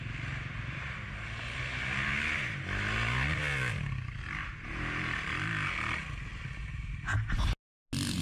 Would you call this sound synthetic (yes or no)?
no